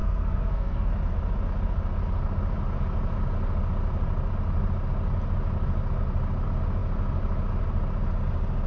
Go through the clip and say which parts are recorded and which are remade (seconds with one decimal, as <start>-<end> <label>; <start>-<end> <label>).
0.0-0.9 remade; 0.9-8.7 recorded